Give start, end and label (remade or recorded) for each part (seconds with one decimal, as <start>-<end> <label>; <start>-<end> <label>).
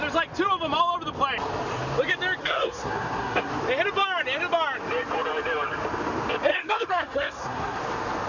0.0-2.4 recorded; 2.4-3.5 remade; 3.5-6.5 recorded; 6.5-7.8 remade; 7.8-8.3 recorded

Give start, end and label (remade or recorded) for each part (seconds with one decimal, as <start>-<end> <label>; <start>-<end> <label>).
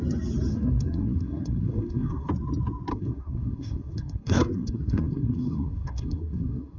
0.0-0.5 recorded; 0.5-2.3 remade; 2.3-2.9 recorded; 2.9-6.8 remade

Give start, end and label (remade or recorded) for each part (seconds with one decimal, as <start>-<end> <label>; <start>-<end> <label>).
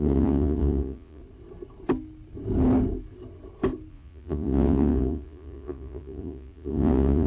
0.0-1.2 remade; 1.2-3.9 recorded; 3.9-7.3 remade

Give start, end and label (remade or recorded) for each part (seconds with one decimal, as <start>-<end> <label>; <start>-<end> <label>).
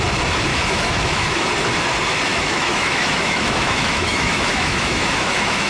0.0-0.5 recorded; 0.5-1.5 remade; 1.5-2.3 recorded; 2.3-5.7 remade